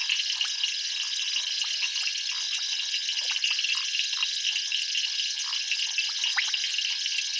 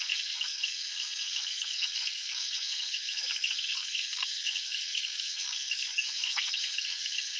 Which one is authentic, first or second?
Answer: first